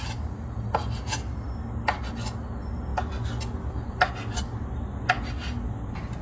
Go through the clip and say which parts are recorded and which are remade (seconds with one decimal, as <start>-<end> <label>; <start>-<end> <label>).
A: 0.0-6.2 recorded